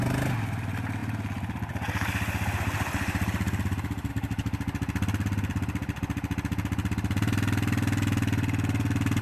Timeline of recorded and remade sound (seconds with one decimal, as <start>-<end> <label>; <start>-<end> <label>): 0.0-9.2 recorded